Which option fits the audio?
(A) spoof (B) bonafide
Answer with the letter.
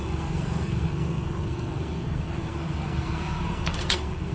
A